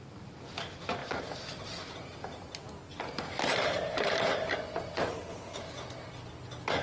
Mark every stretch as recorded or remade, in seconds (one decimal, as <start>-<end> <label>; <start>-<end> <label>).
0.0-5.1 recorded; 5.1-5.6 remade; 5.6-6.8 recorded

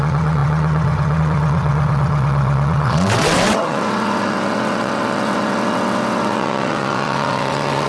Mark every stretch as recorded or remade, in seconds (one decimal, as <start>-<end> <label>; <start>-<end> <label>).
0.0-7.9 remade

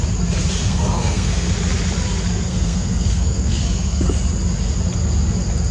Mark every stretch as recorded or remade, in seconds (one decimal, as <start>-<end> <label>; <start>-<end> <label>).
0.0-0.6 recorded; 0.6-1.5 remade; 1.5-2.3 recorded; 2.3-4.1 remade; 4.1-5.7 recorded

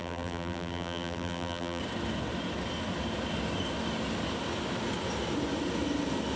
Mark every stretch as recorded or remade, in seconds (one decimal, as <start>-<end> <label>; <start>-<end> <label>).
0.0-1.8 remade; 1.8-6.4 recorded

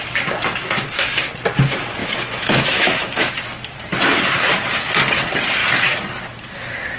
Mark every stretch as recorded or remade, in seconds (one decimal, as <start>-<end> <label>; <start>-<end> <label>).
0.0-2.0 recorded; 2.0-3.4 remade; 3.4-7.0 recorded

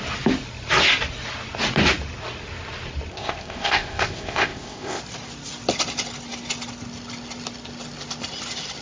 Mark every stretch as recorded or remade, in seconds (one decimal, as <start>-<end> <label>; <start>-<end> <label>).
0.0-3.1 recorded; 3.1-5.0 remade; 5.0-8.8 recorded